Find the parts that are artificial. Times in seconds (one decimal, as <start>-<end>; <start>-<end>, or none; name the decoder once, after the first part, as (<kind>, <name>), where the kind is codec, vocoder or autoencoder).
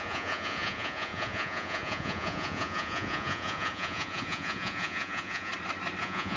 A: 0.0-5.5 (vocoder, Vocos); 6.0-6.4